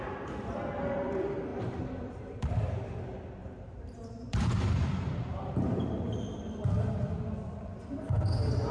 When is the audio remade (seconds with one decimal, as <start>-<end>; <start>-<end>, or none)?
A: 1.5-2.7; 3.4-5.9